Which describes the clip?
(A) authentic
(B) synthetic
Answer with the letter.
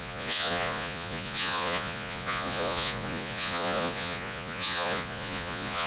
B